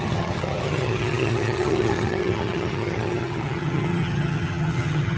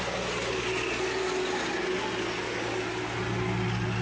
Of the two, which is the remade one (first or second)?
first